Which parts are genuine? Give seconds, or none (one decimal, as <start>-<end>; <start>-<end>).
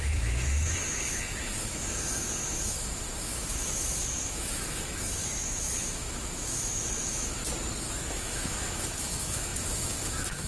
7.4-8.1